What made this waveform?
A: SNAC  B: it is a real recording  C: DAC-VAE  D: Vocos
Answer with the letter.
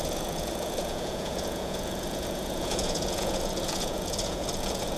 D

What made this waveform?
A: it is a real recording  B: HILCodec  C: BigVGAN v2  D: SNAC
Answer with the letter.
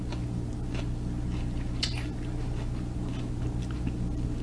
A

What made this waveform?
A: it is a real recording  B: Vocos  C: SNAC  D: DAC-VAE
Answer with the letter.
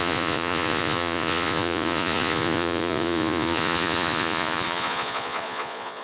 B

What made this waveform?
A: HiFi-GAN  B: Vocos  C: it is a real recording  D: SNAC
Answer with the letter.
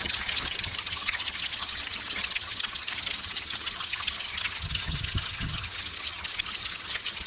A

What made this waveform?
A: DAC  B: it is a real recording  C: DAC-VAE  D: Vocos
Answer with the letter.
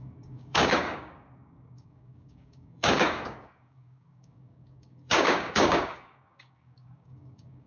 A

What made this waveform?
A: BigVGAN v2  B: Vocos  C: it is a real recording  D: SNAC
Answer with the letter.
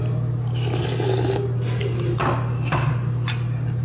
C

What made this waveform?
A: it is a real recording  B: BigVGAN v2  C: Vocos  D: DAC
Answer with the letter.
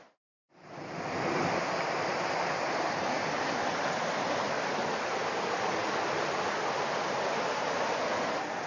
A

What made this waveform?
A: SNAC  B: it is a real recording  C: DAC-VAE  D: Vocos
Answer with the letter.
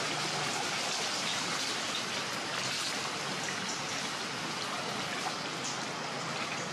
B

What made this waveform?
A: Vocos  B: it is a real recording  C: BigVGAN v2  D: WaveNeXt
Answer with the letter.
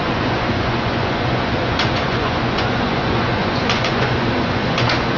A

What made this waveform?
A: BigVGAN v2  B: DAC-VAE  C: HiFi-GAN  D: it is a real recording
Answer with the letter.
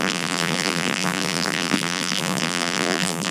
A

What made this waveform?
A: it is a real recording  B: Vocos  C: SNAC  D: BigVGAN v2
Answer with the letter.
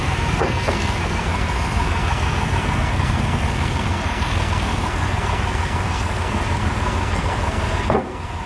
C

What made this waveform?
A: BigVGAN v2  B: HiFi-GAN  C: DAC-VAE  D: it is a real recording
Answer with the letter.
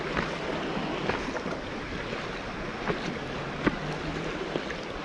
D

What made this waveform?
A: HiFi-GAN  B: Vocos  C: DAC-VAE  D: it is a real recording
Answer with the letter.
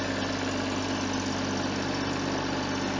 D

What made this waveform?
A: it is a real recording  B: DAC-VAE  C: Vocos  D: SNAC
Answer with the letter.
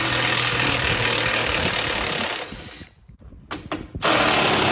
A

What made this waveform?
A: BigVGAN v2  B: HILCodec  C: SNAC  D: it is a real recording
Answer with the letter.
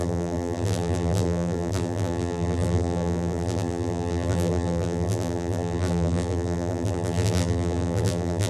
A